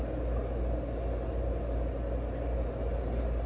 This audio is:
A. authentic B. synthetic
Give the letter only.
A